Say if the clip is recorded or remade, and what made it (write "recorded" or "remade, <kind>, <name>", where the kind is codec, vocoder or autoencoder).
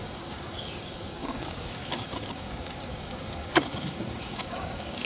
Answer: remade, codec, DAC